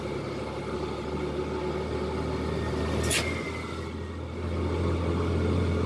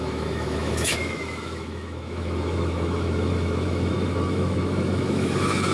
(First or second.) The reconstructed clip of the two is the second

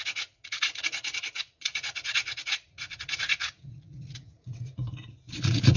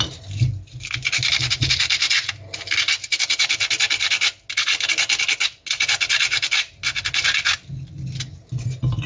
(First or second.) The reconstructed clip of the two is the first